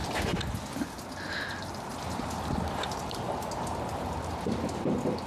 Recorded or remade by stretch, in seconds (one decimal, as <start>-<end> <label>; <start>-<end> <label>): 0.0-2.7 recorded; 2.7-4.3 remade; 4.3-5.3 recorded